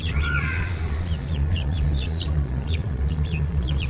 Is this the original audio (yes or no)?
no